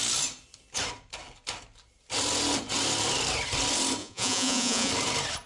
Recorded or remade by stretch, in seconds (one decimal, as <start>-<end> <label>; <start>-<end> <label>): 0.0-4.0 recorded; 4.0-4.9 remade; 4.9-5.5 recorded